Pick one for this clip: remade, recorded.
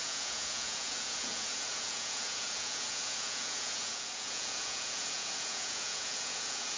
remade